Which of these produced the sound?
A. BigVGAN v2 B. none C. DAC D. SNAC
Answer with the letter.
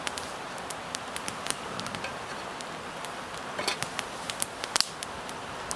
B